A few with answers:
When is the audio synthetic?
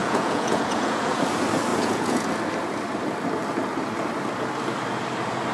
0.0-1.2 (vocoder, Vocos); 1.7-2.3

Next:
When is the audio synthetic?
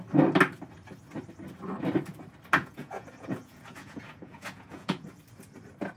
2.6-5.2 (vocoder, Vocos)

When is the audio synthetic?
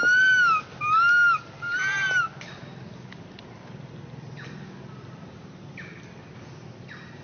none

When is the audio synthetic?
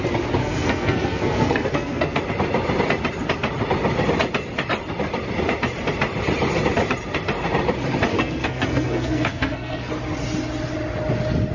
0.4-2.2 (codec, SNAC); 8.1-9.9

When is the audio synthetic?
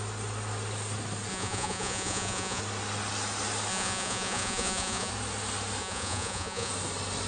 1.3-2.6 (vocoder, Vocos); 3.7-5.1; 5.8-6.7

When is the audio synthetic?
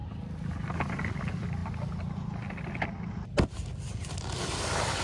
none